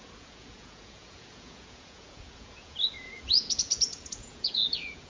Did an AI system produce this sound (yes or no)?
yes